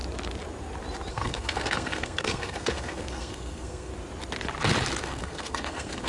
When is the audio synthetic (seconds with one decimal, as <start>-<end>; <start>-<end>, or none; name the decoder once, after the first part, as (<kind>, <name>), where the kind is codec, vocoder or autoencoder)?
1.1-3.9 (codec, SNAC); 5.0-6.1